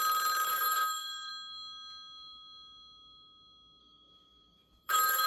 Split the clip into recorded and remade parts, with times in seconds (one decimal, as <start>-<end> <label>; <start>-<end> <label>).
0.0-0.5 recorded; 0.5-1.3 remade; 1.3-3.8 recorded; 3.8-5.3 remade